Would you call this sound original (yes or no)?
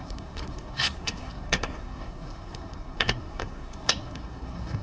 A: no